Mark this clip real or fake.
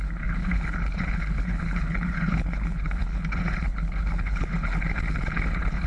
fake